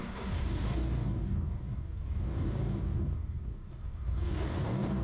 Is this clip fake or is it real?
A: fake